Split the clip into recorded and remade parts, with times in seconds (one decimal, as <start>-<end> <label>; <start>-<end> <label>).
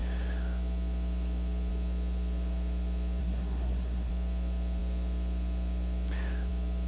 0.0-3.2 recorded; 3.2-4.1 remade; 4.1-6.9 recorded